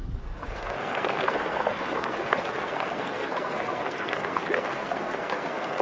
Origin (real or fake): fake